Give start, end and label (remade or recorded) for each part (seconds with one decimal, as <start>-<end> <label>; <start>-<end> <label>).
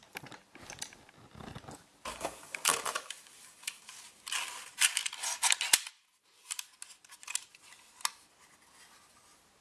0.0-2.1 recorded; 2.1-3.9 remade; 3.9-9.6 recorded